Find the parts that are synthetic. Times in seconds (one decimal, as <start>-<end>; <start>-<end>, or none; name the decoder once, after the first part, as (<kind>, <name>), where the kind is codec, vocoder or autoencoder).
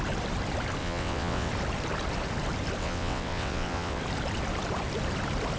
0.8-1.5 (vocoder, WaveNeXt); 2.8-4.0